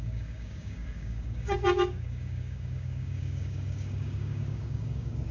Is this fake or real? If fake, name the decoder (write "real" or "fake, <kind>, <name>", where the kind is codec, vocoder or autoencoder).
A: fake, codec, DAC